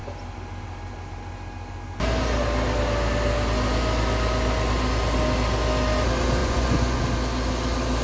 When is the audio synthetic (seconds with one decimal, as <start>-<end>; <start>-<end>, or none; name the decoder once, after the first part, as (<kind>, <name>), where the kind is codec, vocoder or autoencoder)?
6.4-7.0 (vocoder, Vocos)